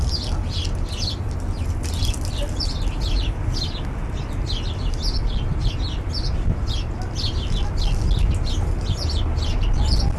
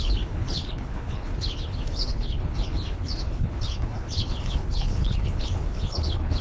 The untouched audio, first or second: first